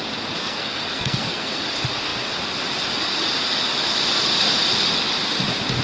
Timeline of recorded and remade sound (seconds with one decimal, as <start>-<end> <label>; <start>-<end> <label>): 0.0-0.4 recorded; 0.4-1.6 remade; 1.6-5.8 recorded